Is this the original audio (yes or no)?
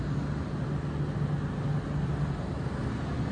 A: yes